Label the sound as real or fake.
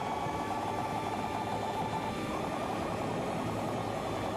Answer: real